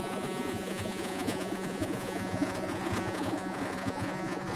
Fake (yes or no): yes